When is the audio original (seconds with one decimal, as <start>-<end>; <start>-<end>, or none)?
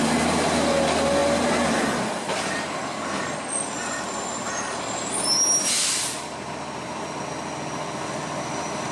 0.0-8.9